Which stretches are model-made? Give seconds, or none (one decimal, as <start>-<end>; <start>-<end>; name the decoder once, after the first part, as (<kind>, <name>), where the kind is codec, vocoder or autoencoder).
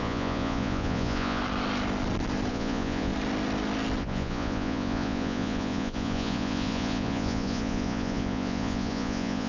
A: 0.0-1.4 (vocoder, Vocos); 2.5-3.1; 4.0-9.5